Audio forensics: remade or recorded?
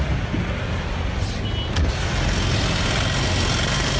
recorded